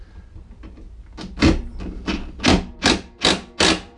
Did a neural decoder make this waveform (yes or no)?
no